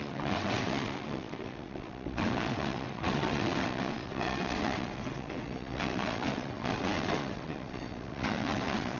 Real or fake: fake